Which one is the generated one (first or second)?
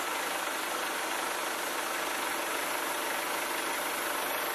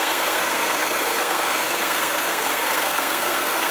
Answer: second